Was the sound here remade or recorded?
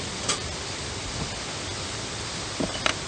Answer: recorded